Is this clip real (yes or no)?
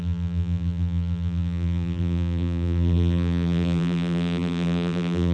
no